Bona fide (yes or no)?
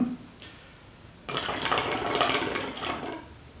yes